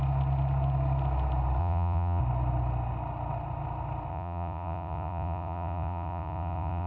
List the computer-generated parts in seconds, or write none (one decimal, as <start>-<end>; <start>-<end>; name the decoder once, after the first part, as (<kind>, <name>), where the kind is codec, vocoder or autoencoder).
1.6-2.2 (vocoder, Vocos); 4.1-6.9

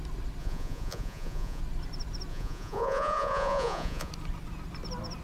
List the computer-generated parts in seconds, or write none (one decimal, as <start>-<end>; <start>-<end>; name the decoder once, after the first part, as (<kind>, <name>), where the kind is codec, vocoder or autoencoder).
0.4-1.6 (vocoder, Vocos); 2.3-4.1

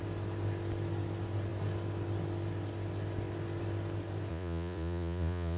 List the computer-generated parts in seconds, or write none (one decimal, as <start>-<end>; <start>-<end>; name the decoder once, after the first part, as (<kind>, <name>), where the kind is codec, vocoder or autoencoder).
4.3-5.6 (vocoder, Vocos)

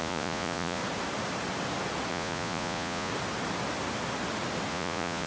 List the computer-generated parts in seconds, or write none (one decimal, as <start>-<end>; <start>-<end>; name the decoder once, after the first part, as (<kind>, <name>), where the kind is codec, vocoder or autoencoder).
0.0-0.8 (vocoder, Vocos); 2.1-3.1; 4.7-5.3

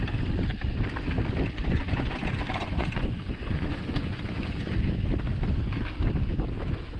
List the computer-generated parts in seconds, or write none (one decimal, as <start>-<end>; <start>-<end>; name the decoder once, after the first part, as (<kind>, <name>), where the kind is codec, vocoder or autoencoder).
1.6-4.7 (vocoder, Vocos)

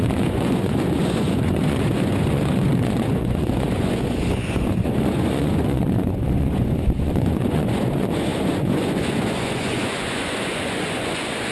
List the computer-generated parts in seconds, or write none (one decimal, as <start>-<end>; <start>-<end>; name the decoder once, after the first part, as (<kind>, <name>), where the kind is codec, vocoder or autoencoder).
0.0-11.5 (vocoder, Vocos)

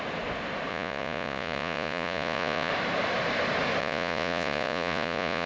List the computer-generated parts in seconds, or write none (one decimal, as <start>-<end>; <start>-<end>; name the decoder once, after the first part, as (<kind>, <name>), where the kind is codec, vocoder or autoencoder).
0.7-2.7 (vocoder, Vocos); 3.8-5.5